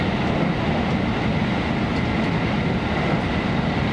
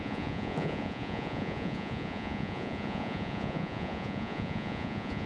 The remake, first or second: second